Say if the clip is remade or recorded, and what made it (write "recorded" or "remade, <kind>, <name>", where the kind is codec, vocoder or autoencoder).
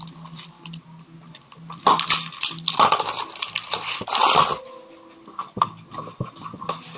recorded